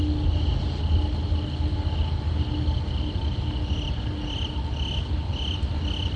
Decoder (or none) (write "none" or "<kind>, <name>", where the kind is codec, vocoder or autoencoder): none